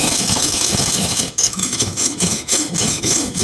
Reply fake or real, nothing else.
fake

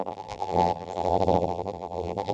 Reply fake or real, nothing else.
fake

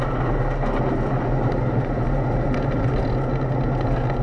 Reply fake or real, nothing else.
real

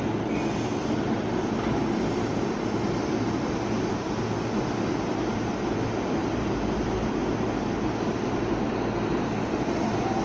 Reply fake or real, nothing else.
real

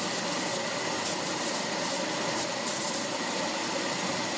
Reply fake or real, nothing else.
real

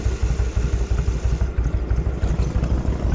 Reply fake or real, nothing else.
real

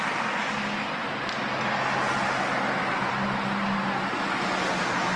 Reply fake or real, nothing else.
real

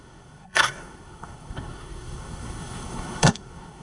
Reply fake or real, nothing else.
fake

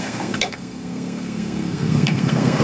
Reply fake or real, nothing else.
fake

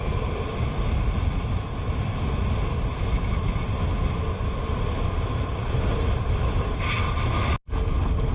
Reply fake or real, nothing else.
real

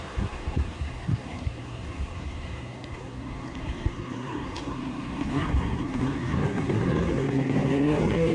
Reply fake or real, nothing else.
fake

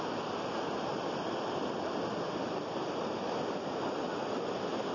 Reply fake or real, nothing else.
real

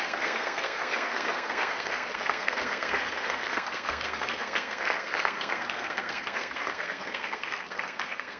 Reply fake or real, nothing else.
fake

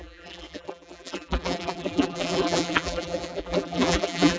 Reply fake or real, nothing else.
fake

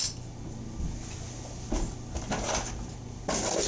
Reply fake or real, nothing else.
real